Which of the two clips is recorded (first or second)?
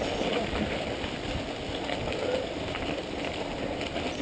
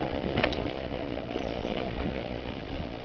first